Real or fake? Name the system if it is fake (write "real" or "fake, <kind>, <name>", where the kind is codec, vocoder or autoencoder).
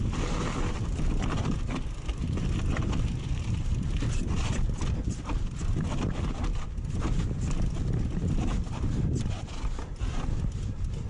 real